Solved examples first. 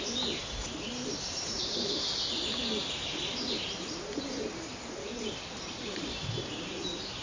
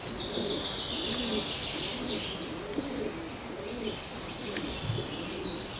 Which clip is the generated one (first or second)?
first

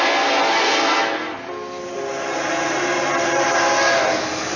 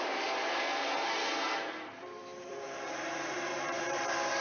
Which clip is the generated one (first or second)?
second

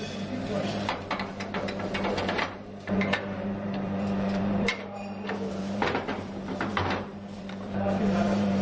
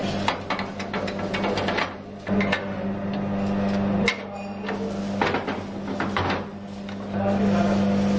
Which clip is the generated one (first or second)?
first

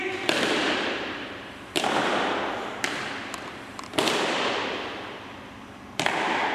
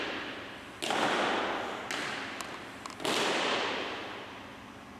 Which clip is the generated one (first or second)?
first